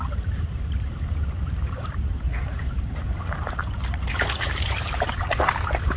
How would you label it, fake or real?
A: fake